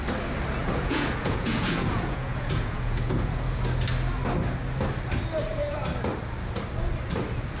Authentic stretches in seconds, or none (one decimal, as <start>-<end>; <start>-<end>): 0.0-0.6; 3.6-7.6